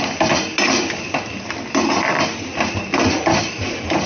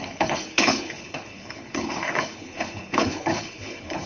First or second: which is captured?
first